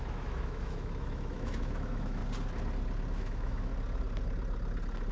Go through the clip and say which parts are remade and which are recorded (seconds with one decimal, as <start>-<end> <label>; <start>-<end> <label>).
0.0-2.2 remade; 2.2-3.1 recorded; 3.1-3.7 remade; 3.7-5.1 recorded